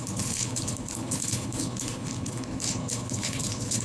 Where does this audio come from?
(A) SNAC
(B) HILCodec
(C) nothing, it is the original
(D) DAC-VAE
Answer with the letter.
B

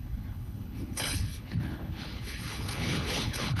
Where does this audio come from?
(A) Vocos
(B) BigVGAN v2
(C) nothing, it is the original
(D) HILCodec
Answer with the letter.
D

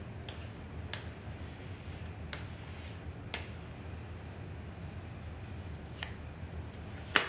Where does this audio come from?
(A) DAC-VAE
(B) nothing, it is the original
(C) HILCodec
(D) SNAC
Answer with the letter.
B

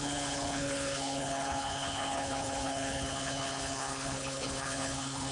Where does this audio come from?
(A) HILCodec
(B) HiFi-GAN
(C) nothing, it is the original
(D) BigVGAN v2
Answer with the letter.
A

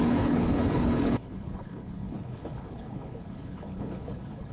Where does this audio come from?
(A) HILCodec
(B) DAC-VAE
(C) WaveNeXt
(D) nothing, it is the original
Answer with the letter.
A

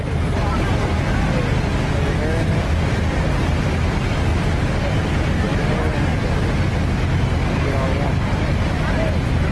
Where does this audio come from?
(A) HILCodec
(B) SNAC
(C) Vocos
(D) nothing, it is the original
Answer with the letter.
D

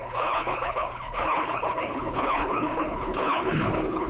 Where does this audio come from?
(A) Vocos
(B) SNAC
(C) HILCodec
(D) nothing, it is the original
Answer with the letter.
C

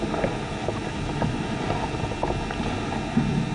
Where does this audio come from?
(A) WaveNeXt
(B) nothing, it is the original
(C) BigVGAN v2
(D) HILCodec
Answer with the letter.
B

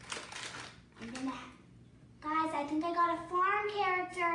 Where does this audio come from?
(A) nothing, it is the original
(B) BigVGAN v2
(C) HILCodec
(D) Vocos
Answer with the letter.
A